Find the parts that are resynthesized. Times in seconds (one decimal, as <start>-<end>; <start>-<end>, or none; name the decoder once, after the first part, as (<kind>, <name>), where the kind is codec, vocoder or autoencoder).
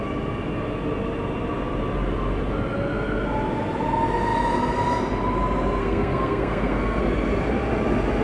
5.8-7.0 (codec, SNAC)